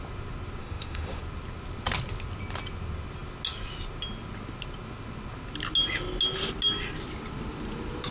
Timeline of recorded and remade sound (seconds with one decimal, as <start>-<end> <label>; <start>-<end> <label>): 0.0-0.6 recorded; 0.6-1.2 remade; 1.2-8.1 recorded